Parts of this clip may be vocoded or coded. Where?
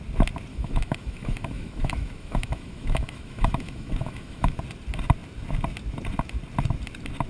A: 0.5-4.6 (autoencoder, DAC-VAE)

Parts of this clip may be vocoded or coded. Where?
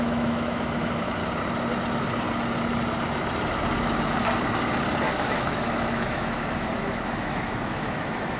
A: 0.0-1.2 (autoencoder, DAC-VAE); 5.1-8.4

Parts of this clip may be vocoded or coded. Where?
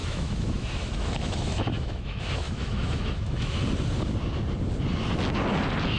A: 0.0-3.6 (autoencoder, DAC-VAE)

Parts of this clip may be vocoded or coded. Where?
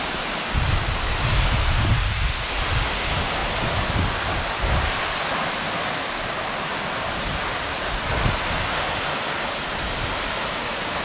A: none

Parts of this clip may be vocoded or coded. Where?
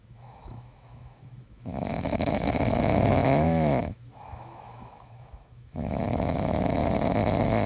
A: 0.0-6.8 (autoencoder, DAC-VAE)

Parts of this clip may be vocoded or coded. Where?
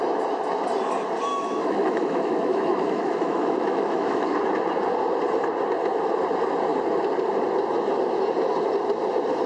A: 1.3-4.4 (autoencoder, DAC-VAE)